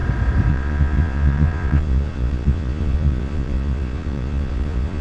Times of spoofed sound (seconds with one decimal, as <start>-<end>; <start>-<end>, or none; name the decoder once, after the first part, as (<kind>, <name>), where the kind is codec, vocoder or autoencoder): 0.5-5.0 (vocoder, Vocos)